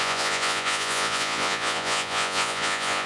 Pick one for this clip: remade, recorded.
remade